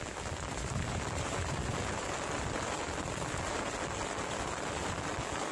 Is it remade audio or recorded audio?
recorded